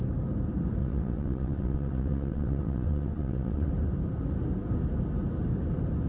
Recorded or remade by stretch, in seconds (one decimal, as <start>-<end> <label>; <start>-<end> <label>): 0.0-0.8 recorded; 0.8-3.7 remade; 3.7-6.1 recorded